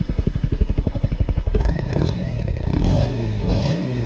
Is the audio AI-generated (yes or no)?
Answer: yes